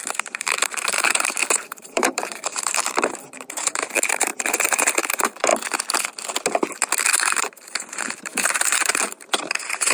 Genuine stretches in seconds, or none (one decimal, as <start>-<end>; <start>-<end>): 5.5-7.1